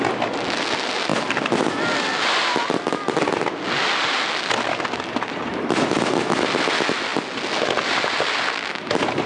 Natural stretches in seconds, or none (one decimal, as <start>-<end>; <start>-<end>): 0.0-9.3